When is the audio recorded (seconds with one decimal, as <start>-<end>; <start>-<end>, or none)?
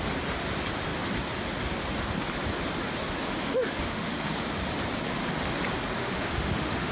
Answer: 0.0-3.6; 4.2-6.0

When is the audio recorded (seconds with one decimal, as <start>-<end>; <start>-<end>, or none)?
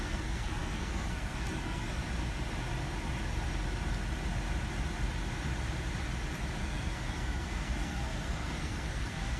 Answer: 2.0-6.6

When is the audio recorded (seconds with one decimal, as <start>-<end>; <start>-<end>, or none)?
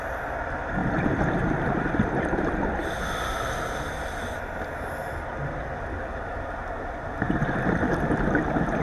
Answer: 0.0-0.8; 3.0-8.8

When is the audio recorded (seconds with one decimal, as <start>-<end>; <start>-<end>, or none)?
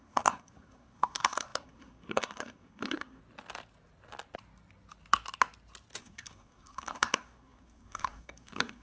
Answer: 3.2-6.0